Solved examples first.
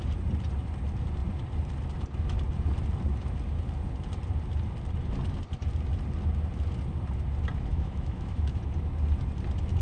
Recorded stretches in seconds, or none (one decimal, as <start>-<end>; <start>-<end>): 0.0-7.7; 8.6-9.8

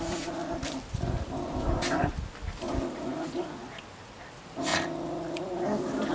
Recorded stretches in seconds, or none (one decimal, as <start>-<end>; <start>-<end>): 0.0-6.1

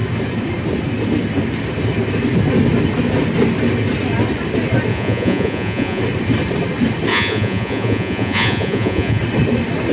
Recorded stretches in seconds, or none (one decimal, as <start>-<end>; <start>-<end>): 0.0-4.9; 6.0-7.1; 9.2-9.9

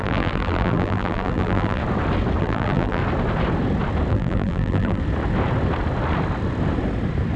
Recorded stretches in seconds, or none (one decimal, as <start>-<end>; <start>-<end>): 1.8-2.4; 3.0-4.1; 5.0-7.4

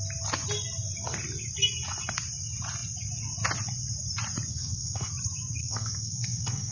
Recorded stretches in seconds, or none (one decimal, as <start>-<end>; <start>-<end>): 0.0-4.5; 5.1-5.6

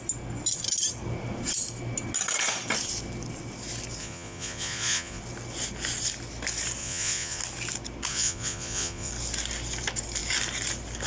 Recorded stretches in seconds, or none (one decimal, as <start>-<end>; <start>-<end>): 0.0-4.0; 5.2-6.8; 7.4-8.1; 9.1-11.1

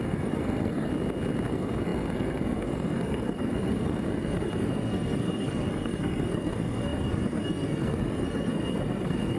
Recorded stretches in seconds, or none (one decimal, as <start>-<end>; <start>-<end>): 0.9-1.5